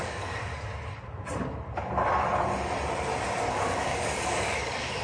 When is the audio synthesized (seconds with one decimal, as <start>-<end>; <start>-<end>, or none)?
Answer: 0.0-0.5; 3.5-5.0

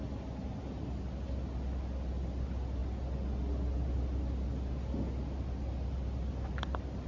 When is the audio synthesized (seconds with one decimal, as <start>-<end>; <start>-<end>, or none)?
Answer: none

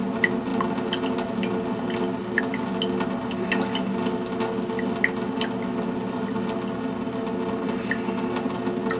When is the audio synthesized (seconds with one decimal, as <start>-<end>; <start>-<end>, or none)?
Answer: none

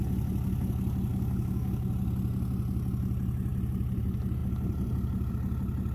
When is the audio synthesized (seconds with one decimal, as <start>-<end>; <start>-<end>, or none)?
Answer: 1.1-1.9

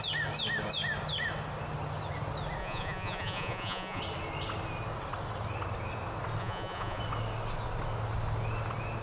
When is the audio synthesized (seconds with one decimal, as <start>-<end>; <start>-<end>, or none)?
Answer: 2.6-4.0; 6.4-7.0

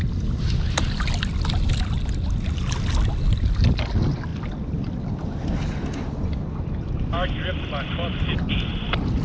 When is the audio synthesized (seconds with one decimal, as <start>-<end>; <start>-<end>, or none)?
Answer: none

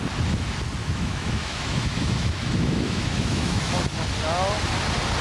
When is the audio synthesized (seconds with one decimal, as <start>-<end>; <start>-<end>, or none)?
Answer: 0.8-3.7